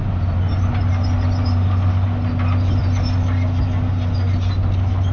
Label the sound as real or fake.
real